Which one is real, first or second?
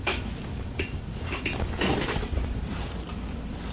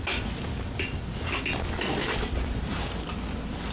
second